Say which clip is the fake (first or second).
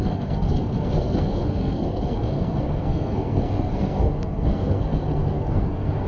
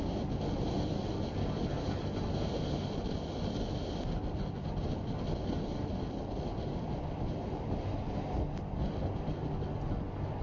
first